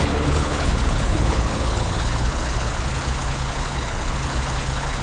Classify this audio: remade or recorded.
remade